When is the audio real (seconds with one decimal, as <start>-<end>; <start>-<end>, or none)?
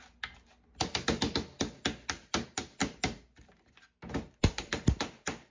0.0-2.8; 3.7-5.5